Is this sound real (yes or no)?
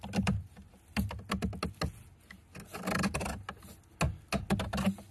yes